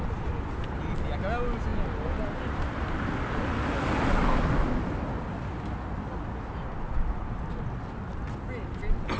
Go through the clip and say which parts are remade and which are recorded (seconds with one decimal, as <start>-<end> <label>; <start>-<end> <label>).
0.0-9.2 recorded